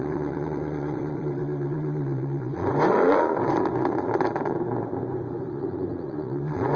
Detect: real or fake fake